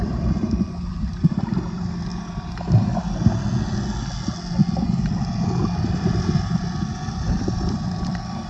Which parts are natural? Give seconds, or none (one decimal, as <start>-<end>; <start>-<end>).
2.1-5.8